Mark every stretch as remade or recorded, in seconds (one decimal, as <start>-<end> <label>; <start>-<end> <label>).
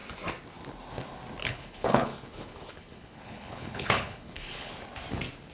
0.0-1.4 recorded; 1.4-4.7 remade; 4.7-5.5 recorded